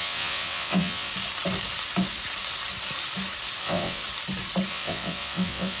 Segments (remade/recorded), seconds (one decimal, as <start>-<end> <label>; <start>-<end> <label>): 0.0-1.1 remade; 1.1-3.6 recorded; 3.6-4.0 remade; 4.0-4.7 recorded; 4.7-5.8 remade